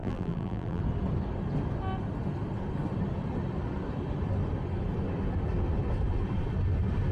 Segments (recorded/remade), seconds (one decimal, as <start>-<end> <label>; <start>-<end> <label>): 0.0-0.8 remade; 0.8-7.1 recorded